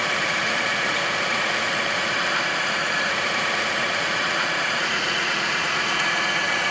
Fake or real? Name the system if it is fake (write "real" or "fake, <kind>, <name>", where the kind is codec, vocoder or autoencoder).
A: fake, vocoder, Vocos